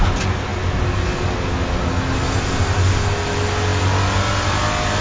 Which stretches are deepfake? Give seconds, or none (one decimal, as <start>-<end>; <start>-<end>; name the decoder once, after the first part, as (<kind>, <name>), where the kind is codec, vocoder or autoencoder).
none